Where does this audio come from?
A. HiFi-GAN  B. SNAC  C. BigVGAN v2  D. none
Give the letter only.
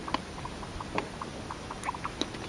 D